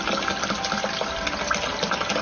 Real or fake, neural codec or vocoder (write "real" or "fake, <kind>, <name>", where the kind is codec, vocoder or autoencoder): real